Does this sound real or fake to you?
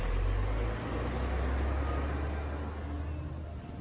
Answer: real